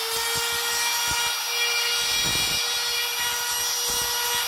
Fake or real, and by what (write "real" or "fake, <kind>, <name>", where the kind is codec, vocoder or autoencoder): real